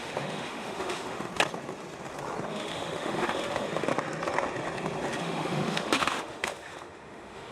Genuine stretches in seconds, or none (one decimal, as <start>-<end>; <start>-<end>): 1.3-2.5; 3.9-5.2